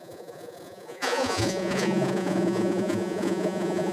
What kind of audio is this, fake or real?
fake